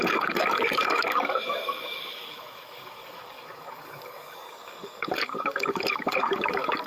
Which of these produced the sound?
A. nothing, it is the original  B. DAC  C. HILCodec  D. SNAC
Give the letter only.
B